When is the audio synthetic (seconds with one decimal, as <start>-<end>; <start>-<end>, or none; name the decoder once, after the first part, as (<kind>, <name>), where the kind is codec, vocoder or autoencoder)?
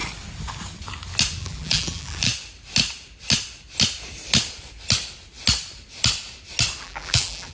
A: 1.4-2.3 (vocoder, BigVGAN v2); 6.8-7.5